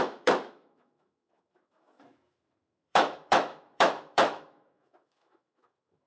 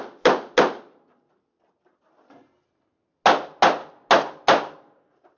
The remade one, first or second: first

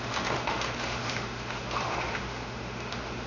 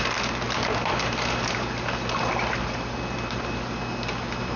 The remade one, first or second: first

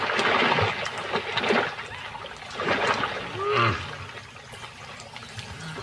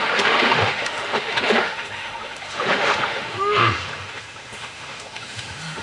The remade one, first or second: second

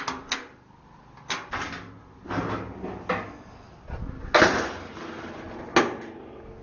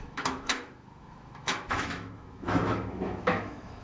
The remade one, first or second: second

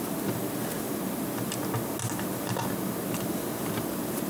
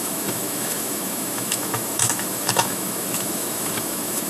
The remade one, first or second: second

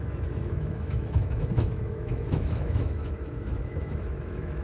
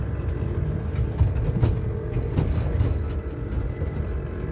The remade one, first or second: first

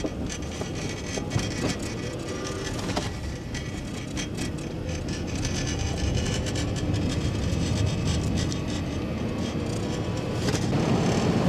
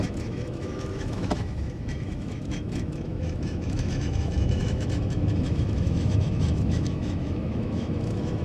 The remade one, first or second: second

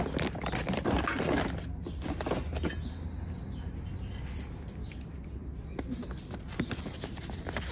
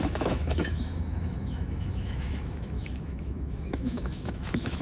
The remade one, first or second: second